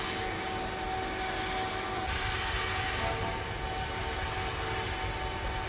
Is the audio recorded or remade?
recorded